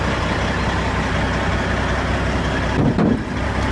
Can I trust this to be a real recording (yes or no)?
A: yes